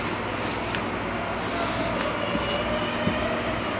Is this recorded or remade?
recorded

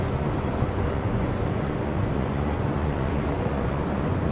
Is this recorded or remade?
remade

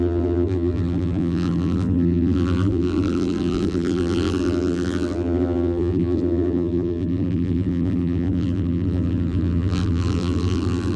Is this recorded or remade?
remade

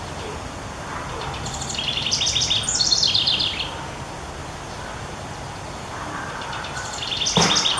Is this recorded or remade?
remade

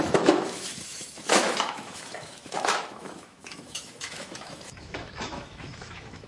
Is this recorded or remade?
remade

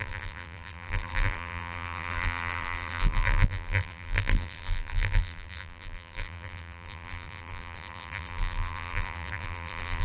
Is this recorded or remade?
remade